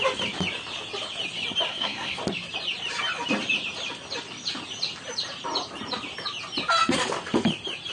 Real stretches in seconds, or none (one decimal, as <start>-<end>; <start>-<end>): 0.0-1.7; 2.2-7.9